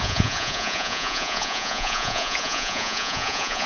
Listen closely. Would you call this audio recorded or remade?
remade